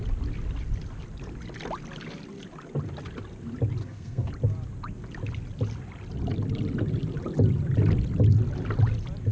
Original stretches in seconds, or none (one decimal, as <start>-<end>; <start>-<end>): 0.0-3.8; 4.3-9.3